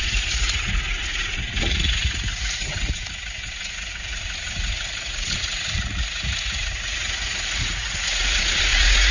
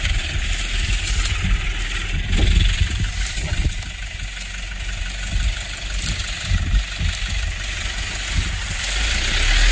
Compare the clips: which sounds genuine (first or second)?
second